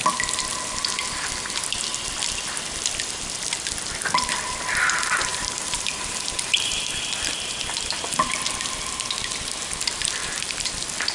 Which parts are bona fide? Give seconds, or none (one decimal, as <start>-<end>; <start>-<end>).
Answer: 0.0-5.3; 6.8-10.2; 10.7-11.1